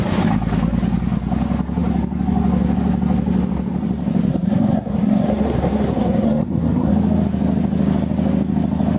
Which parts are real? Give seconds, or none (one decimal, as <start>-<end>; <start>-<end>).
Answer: 0.0-4.3; 6.9-9.0